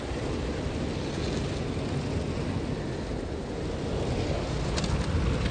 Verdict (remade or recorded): recorded